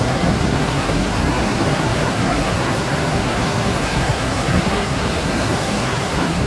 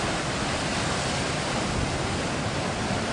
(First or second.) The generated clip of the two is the first